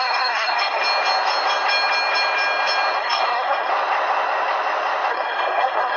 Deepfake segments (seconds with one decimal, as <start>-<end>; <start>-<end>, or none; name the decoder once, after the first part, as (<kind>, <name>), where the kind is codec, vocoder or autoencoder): 0.0-0.8 (codec, SNAC); 3.0-3.7; 5.1-6.0